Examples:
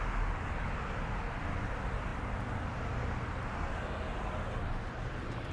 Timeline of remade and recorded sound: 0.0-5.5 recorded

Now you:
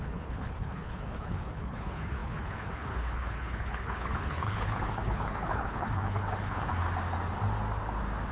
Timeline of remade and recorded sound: 0.0-6.7 remade; 6.7-8.3 recorded

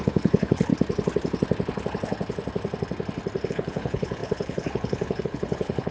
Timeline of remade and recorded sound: 0.0-0.7 remade; 0.7-3.5 recorded; 3.5-5.9 remade

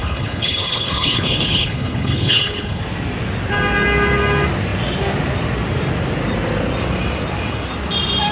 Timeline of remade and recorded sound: 0.0-2.8 remade; 2.8-8.3 recorded

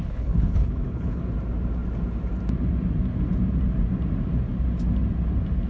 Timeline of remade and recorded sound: 0.0-1.2 remade; 1.2-5.7 recorded